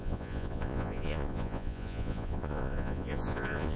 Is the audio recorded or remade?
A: remade